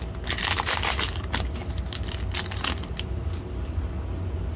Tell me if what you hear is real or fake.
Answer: real